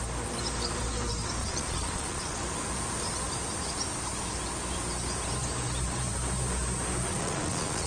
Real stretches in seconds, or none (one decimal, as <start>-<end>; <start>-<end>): 0.0-1.4; 2.4-7.1